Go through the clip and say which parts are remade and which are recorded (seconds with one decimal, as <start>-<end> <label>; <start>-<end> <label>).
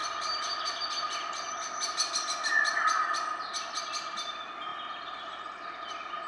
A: 0.0-6.3 recorded